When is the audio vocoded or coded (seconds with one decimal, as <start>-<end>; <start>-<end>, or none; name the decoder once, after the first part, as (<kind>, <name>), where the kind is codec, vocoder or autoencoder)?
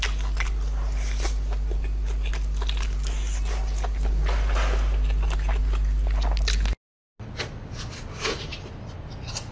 none